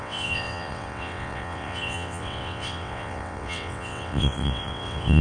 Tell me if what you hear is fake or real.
fake